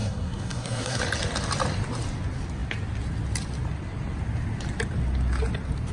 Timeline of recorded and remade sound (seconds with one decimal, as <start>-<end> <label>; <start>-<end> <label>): 0.0-1.0 remade; 1.0-5.9 recorded